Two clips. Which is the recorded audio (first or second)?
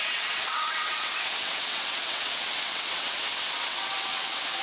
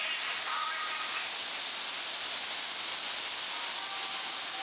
second